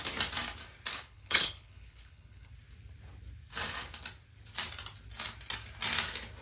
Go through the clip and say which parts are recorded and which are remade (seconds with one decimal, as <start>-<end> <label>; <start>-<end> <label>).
0.0-0.9 recorded; 0.9-2.5 remade; 2.5-6.4 recorded